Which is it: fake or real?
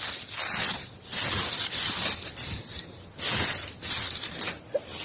real